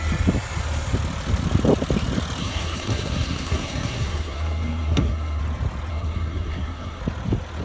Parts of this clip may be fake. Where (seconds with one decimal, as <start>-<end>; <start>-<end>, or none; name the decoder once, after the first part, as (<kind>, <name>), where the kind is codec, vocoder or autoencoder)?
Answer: 2.4-5.4 (codec, SNAC); 5.9-7.0